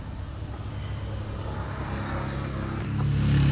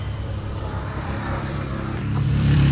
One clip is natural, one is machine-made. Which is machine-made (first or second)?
second